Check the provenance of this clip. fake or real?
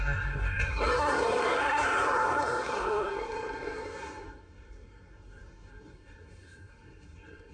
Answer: fake